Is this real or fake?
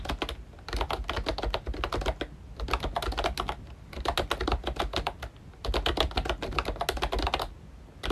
real